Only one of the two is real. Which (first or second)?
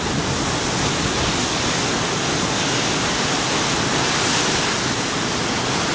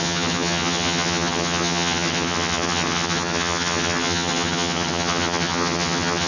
first